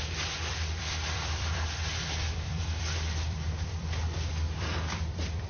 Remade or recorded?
remade